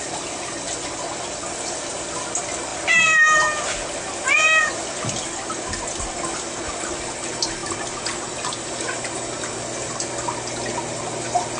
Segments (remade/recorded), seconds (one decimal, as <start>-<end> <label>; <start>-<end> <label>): 0.0-11.6 recorded